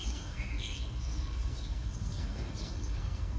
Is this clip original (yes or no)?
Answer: no